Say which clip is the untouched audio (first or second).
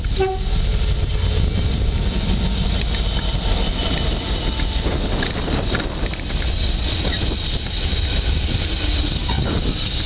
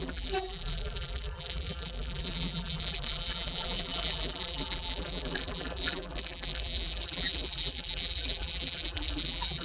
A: first